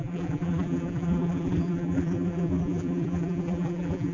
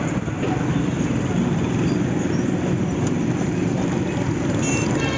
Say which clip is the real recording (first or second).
second